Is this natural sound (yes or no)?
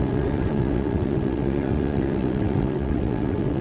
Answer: no